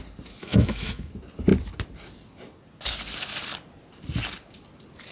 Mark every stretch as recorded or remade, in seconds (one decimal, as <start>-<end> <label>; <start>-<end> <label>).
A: 0.0-0.4 recorded; 0.4-1.1 remade; 1.1-5.1 recorded